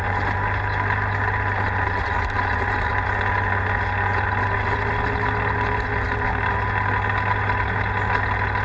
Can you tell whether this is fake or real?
real